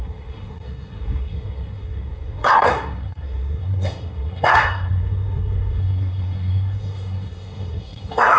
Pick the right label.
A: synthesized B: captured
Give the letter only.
A